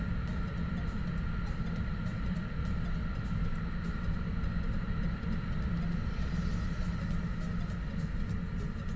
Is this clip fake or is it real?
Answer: real